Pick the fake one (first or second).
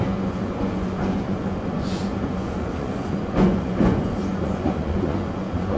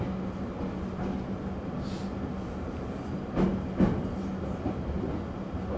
first